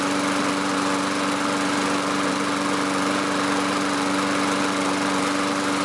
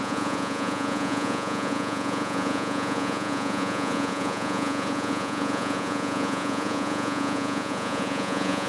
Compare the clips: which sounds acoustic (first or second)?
first